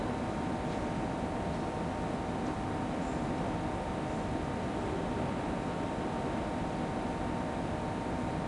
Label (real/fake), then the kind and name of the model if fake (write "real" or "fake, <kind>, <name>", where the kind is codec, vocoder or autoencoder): real